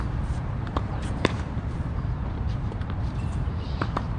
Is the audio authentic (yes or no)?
no